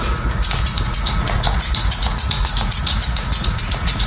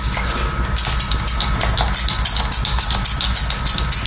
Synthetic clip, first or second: first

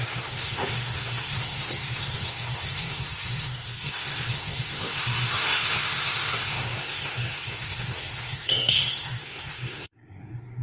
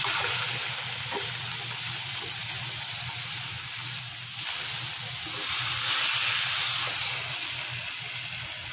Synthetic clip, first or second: first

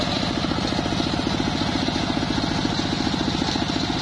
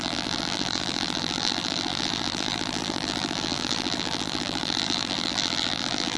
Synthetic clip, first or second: second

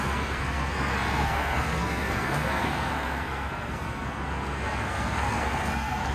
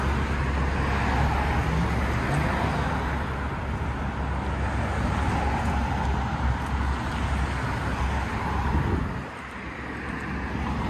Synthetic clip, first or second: first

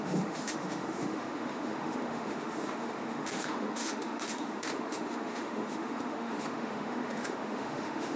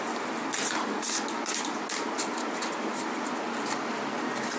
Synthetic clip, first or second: first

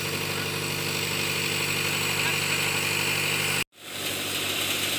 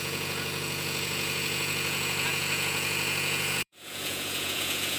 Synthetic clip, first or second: second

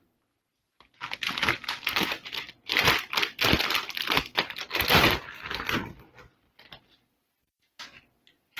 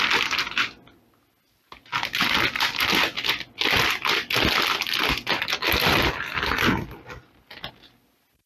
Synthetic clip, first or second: first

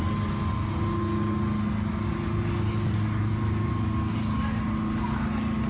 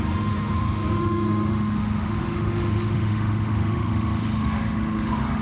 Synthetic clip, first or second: second